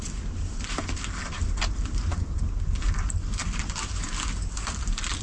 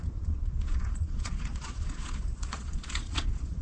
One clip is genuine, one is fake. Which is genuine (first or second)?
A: first